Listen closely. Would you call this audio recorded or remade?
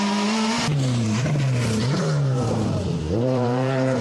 remade